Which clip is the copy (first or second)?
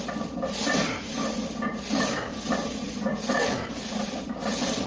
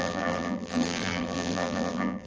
second